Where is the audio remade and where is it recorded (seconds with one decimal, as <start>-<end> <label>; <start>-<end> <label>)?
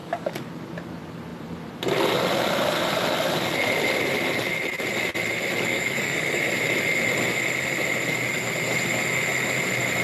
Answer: 0.0-0.5 remade; 0.5-5.7 recorded; 5.7-6.4 remade; 6.4-10.0 recorded